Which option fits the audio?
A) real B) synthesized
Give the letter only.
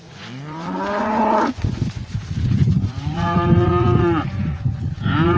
B